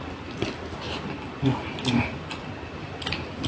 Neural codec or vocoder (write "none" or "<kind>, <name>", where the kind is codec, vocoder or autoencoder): none